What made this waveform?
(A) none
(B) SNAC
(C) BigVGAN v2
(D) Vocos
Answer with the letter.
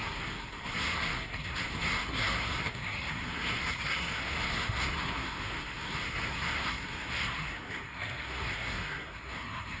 B